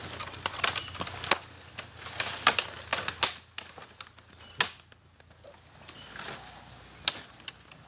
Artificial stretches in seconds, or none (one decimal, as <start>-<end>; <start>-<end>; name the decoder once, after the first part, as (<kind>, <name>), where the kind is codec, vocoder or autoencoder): none